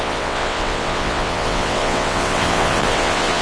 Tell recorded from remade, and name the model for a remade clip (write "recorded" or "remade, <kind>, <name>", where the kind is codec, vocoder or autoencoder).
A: remade, vocoder, WaveNeXt